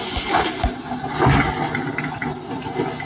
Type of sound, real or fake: real